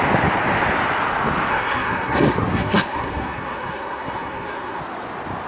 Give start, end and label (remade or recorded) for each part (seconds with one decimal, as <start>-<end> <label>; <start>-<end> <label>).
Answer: 0.0-1.5 recorded; 1.5-4.8 remade; 4.8-5.5 recorded